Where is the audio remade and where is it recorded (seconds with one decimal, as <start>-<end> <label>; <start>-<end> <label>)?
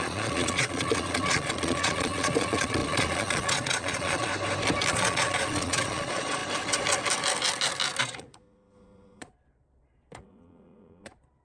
0.0-4.3 remade; 4.3-4.9 recorded; 4.9-6.4 remade; 6.4-8.0 recorded; 8.0-11.4 remade